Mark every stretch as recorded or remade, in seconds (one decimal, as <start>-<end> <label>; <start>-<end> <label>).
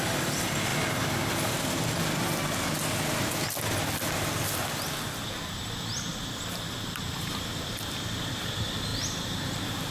0.0-6.1 recorded; 6.1-8.5 remade; 8.5-8.9 recorded; 8.9-9.9 remade